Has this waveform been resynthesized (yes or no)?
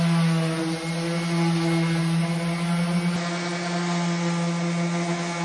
no